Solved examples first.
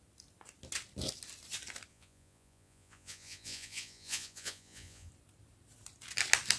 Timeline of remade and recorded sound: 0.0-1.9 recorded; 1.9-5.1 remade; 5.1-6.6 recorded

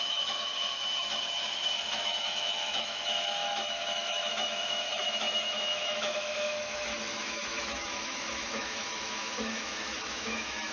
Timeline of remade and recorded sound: 0.0-10.7 remade

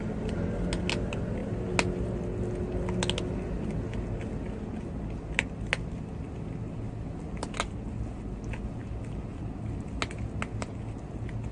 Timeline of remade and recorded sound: 0.0-11.5 recorded

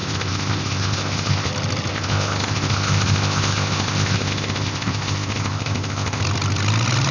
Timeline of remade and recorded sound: 0.0-1.5 remade; 1.5-1.9 recorded; 1.9-6.2 remade; 6.2-7.1 recorded

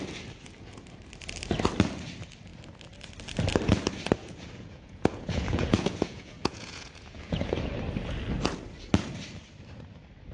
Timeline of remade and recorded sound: 0.0-4.2 recorded; 4.2-7.7 remade; 7.7-10.3 recorded

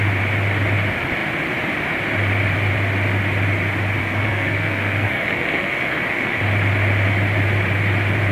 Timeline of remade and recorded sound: 0.0-4.0 recorded; 4.0-6.4 remade; 6.4-8.3 recorded

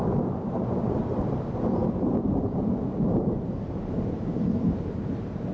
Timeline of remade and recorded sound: 0.0-5.5 remade